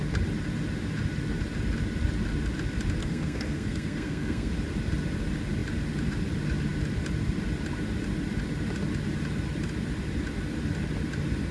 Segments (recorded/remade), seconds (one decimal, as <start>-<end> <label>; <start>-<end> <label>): 0.0-3.0 recorded; 3.0-4.5 remade; 4.5-11.5 recorded